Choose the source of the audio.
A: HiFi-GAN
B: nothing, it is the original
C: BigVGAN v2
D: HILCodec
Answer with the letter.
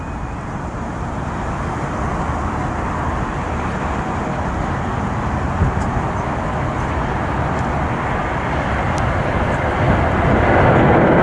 B